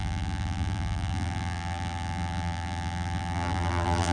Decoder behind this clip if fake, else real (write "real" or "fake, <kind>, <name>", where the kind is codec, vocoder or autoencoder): fake, vocoder, BigVGAN v2